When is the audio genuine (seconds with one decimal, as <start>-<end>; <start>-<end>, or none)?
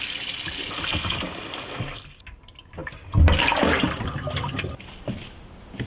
0.0-5.9